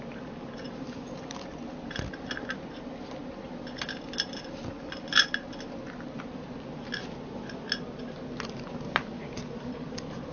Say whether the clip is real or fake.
real